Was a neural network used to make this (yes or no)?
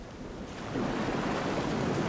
no